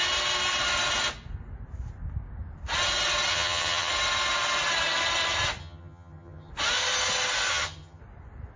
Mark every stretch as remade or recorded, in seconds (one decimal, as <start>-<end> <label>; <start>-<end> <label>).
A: 0.0-3.3 recorded; 3.3-3.9 remade; 3.9-5.6 recorded; 5.6-6.5 remade; 6.5-7.5 recorded; 7.5-8.0 remade; 8.0-8.6 recorded